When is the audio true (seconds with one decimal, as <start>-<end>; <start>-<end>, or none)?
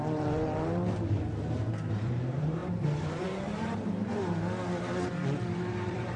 4.1-5.5